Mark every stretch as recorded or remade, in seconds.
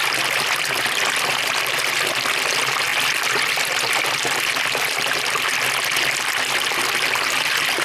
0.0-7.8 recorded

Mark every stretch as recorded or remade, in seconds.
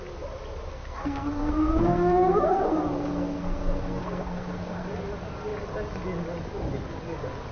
0.0-0.7 recorded; 0.7-4.9 remade; 4.9-7.5 recorded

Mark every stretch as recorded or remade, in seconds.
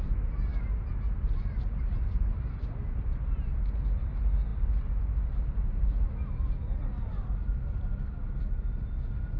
0.0-9.4 recorded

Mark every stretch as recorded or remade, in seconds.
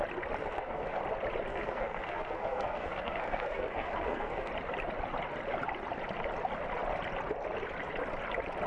0.0-0.4 recorded; 0.4-1.0 remade; 1.0-1.5 recorded; 1.5-4.5 remade; 4.5-8.7 recorded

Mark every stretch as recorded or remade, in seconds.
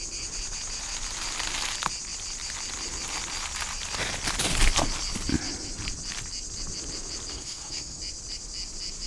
0.0-7.3 recorded; 7.3-8.0 remade; 8.0-9.1 recorded